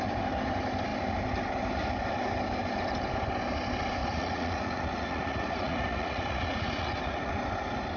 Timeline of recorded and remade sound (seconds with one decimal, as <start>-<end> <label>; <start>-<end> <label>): 0.0-4.0 recorded; 4.0-7.3 remade; 7.3-8.0 recorded